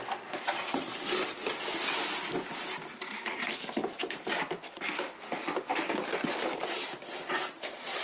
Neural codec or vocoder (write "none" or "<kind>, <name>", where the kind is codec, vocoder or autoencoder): none